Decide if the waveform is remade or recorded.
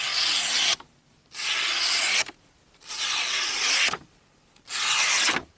recorded